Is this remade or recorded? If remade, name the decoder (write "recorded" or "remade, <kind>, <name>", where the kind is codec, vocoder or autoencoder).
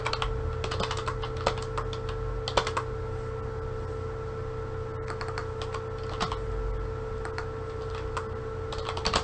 recorded